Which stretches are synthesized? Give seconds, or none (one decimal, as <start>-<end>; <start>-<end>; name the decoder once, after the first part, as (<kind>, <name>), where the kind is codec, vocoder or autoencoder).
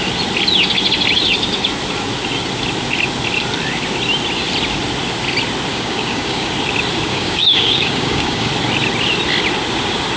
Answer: 5.7-6.5 (codec, DAC); 7.1-8.5